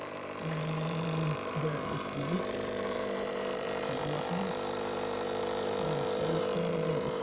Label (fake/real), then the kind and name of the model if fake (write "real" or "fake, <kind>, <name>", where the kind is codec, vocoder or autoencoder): fake, vocoder, BigVGAN v2